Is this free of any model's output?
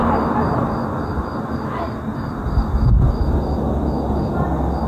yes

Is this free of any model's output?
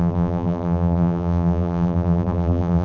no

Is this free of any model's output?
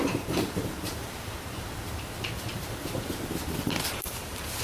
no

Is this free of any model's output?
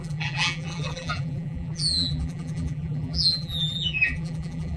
no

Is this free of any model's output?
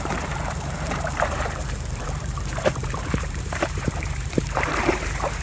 no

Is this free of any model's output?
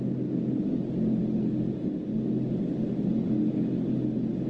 yes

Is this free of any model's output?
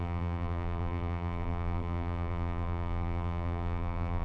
no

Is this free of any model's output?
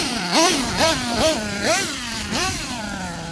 no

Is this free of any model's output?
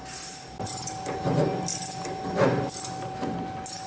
yes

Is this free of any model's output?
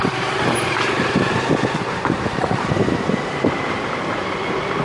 no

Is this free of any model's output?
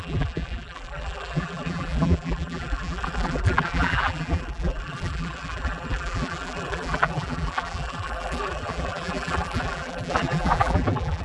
no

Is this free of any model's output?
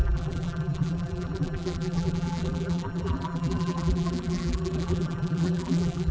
no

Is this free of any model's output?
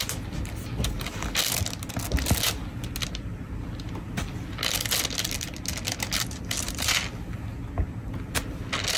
yes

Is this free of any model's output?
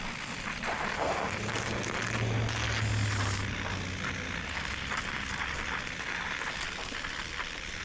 yes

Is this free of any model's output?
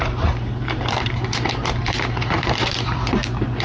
no